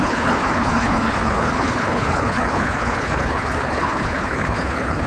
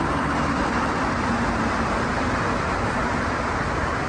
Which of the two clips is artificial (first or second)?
first